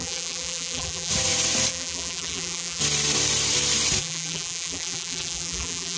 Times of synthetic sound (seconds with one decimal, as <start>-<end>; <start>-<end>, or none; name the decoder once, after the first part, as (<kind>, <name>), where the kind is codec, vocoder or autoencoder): 0.0-1.1 (vocoder, BigVGAN v2); 1.7-2.8; 4.0-6.0